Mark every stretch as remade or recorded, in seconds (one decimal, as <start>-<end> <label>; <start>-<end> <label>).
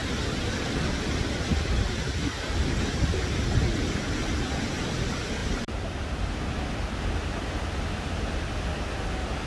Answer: 0.0-5.4 recorded; 5.4-7.1 remade; 7.1-9.5 recorded